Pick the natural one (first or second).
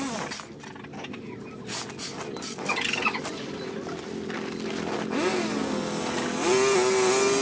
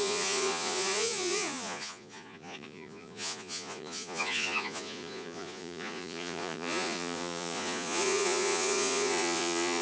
first